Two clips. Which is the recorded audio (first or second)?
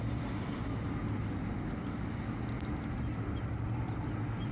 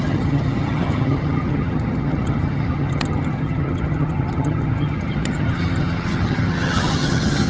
first